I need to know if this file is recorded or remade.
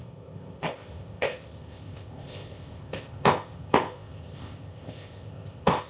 remade